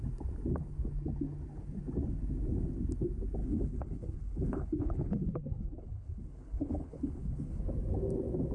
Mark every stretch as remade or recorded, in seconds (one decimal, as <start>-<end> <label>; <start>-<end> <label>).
0.0-3.4 recorded; 3.4-7.6 remade; 7.6-8.5 recorded